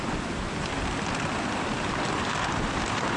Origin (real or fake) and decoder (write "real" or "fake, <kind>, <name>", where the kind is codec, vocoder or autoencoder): fake, vocoder, BigVGAN v2